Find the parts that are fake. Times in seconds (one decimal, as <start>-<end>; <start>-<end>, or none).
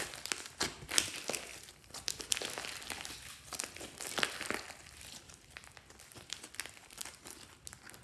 1.5-2.2